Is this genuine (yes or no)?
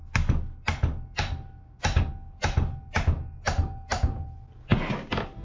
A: yes